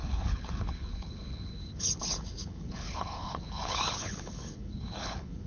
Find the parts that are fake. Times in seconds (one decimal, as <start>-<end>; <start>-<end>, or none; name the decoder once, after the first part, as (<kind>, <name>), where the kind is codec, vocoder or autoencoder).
0.0-5.5 (codec, HILCodec)